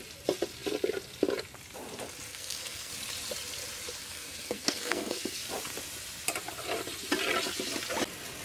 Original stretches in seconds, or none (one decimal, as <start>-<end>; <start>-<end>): 0.0-2.3; 2.9-4.0; 5.4-8.4

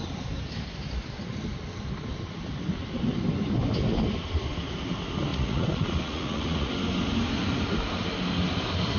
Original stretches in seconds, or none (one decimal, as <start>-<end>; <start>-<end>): 0.0-5.3; 6.7-9.0

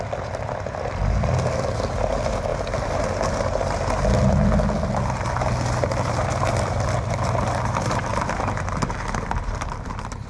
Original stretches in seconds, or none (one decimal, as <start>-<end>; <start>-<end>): 2.5-6.1

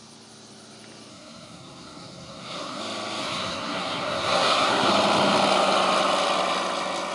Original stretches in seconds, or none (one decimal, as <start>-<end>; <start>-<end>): 0.0-1.1; 2.8-3.2; 4.9-7.1